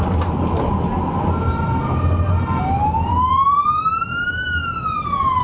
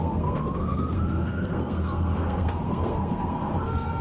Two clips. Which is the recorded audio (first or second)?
first